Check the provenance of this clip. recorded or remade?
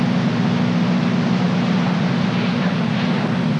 recorded